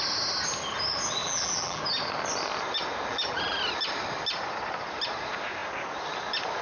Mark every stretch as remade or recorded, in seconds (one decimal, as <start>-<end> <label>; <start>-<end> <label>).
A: 0.0-1.2 recorded; 1.2-1.8 remade; 1.8-3.1 recorded; 3.1-3.6 remade; 3.6-6.6 recorded